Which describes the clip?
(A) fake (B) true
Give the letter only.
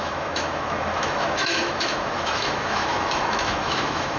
A